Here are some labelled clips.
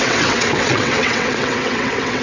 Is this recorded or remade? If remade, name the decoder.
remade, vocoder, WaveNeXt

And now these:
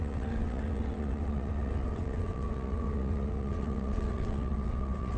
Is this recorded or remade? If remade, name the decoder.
remade, vocoder, WaveNeXt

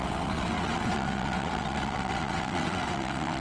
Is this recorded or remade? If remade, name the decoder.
remade, vocoder, WaveNeXt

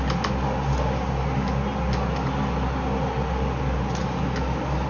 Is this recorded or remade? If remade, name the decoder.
recorded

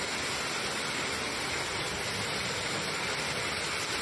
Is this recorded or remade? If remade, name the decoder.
recorded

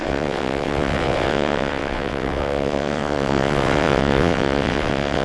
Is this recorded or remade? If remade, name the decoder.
remade, vocoder, WaveNeXt